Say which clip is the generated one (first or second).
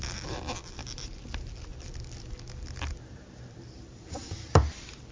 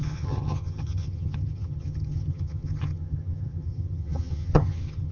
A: second